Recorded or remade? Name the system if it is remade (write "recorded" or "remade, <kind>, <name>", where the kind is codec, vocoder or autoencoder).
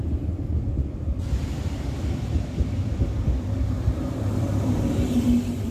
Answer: remade, vocoder, BigVGAN v2